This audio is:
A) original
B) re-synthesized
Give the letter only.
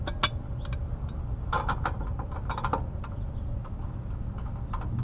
A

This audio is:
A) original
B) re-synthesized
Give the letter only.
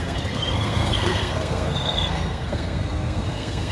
B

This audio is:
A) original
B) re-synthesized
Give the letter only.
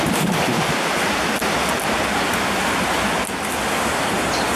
A